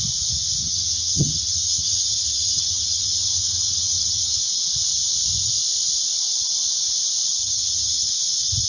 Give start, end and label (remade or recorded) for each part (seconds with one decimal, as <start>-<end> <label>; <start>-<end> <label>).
0.0-0.6 recorded; 0.6-4.4 remade; 4.4-7.4 recorded; 7.4-8.1 remade; 8.1-8.7 recorded